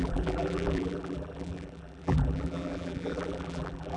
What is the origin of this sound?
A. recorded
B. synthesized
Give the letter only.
B